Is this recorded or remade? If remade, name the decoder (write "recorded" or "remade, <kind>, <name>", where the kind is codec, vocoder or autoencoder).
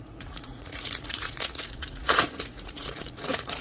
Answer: remade, vocoder, Vocos